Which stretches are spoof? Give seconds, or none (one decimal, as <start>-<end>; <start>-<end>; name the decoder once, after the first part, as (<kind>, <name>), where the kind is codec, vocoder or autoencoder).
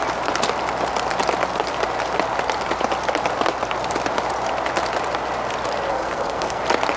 5.9-6.6 (codec, SNAC)